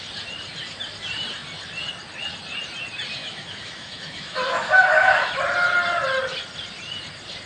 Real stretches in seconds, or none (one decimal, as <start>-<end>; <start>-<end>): 0.0-3.2; 5.3-7.5